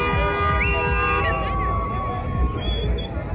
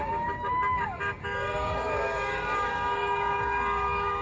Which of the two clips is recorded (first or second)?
first